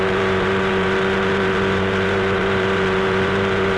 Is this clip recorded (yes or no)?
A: no